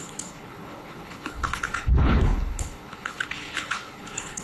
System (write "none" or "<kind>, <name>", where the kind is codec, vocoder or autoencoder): codec, HILCodec